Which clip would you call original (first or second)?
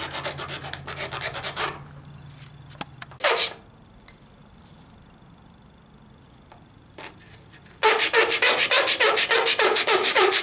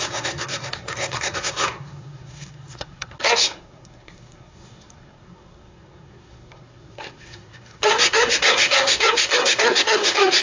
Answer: first